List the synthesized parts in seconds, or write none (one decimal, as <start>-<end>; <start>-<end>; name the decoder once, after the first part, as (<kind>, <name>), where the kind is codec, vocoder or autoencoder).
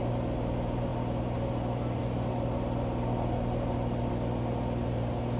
none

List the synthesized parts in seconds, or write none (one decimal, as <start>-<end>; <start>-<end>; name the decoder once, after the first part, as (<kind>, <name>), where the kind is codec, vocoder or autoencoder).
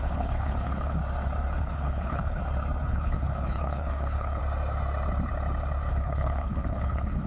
0.0-1.0 (codec, HILCodec); 1.6-2.4; 2.9-4.4; 5.9-7.3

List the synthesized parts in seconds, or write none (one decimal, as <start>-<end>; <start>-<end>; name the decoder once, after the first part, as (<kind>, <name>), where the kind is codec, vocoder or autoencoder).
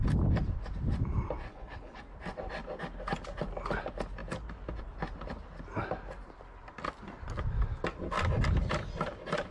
1.5-2.0 (codec, HILCodec)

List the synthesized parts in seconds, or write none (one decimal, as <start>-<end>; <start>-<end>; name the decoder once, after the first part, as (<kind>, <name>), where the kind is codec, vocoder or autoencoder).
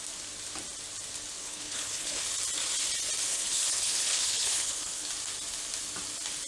1.4-2.2 (codec, HILCodec); 3.3-5.1